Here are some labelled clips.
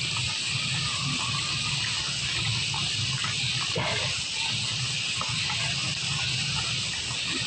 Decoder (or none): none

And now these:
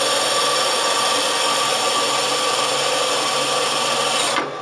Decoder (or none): none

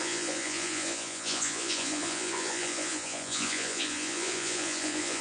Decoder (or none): vocoder, Vocos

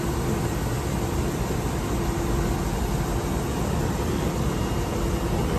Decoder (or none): none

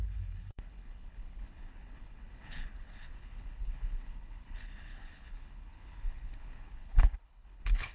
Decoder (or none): codec, HILCodec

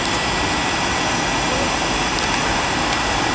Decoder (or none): none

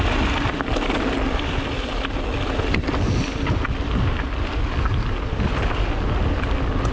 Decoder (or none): none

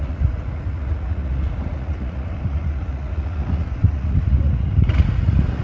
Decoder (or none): vocoder, Vocos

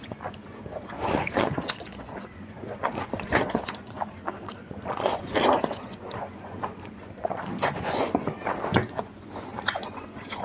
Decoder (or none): vocoder, Vocos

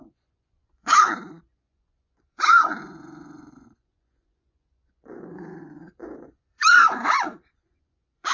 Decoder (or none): vocoder, Vocos